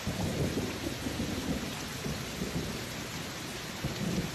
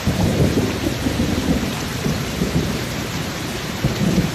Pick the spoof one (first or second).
second